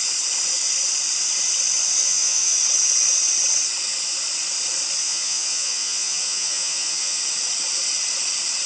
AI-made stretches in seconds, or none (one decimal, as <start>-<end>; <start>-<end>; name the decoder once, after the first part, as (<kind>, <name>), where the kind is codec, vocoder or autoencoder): 2.0-2.6 (vocoder, Vocos); 5.0-7.2